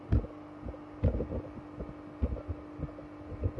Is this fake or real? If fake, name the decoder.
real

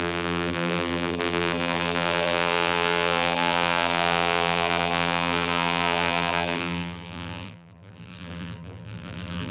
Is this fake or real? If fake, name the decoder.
fake, vocoder, BigVGAN v2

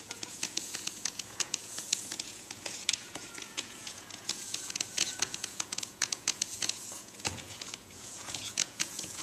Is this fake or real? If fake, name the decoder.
fake, vocoder, Vocos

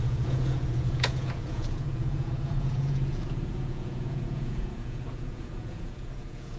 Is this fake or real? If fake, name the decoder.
fake, vocoder, Vocos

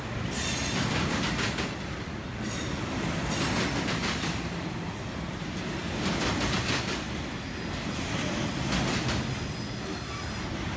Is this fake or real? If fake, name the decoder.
real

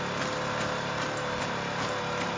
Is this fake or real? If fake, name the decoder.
real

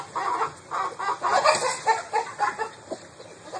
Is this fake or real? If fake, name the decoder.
real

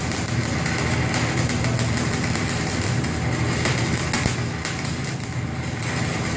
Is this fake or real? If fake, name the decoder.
real